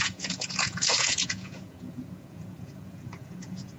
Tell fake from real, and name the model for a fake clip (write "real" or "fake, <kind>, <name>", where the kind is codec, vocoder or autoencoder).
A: fake, vocoder, Vocos